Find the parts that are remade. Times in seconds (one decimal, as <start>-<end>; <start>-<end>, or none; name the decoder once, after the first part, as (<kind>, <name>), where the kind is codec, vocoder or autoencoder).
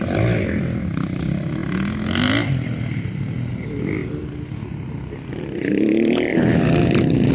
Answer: none